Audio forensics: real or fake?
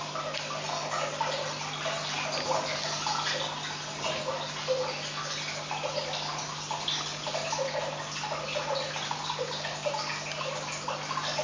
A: real